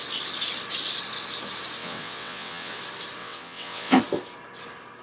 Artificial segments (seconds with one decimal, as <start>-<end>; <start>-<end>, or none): 1.8-2.8; 3.2-4.0